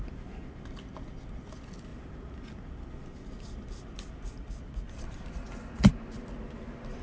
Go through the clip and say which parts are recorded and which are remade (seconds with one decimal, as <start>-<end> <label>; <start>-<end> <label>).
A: 0.0-7.0 recorded